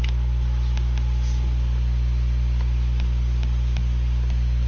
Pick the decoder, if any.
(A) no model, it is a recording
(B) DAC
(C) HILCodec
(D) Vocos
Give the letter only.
A